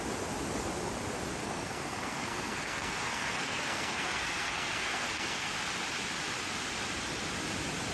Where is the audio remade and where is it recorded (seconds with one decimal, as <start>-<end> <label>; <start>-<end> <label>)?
0.0-1.4 recorded; 1.4-5.5 remade; 5.5-7.9 recorded